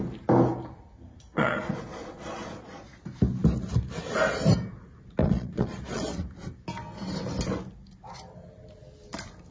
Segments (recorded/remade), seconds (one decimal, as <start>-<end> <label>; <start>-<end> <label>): 0.0-1.3 recorded; 1.3-3.0 remade; 3.0-5.2 recorded; 5.2-6.1 remade; 6.1-9.5 recorded